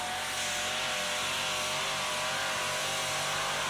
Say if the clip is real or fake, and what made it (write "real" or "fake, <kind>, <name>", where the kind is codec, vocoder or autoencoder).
real